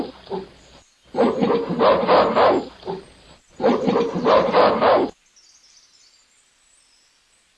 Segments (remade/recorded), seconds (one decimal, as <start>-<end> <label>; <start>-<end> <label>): 0.0-1.0 remade; 1.0-2.7 recorded; 2.7-4.9 remade; 4.9-5.5 recorded; 5.5-7.6 remade